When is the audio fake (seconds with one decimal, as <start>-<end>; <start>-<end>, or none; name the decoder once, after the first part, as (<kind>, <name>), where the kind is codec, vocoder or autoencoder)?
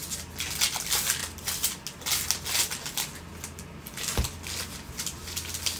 1.2-1.8 (vocoder, BigVGAN v2)